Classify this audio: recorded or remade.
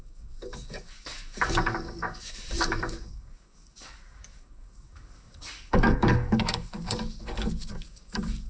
remade